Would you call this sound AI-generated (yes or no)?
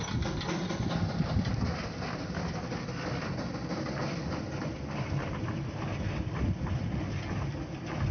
no